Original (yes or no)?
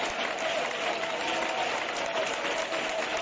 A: yes